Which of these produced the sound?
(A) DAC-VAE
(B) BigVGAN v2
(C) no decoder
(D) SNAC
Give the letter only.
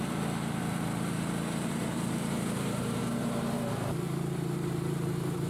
B